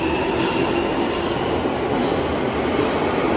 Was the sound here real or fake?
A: real